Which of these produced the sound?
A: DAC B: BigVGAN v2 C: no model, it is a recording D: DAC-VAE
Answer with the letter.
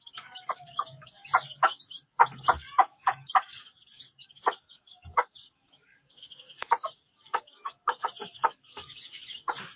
A